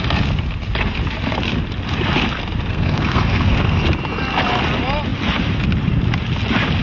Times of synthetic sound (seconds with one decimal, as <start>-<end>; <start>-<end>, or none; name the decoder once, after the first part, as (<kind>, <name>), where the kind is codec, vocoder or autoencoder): 2.7-3.8 (codec, SNAC)